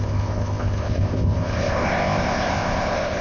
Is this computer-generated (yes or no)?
yes